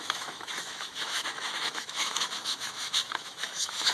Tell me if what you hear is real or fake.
fake